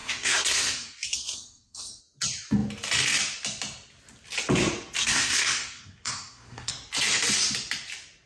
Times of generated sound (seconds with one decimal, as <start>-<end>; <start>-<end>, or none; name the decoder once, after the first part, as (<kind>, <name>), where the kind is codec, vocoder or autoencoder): 0.0-2.0 (codec, SNAC); 5.0-6.7